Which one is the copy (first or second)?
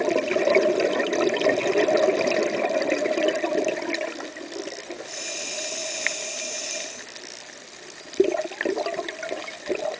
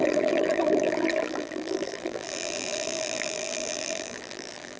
second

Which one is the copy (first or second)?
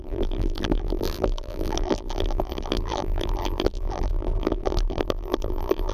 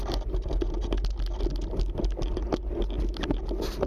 first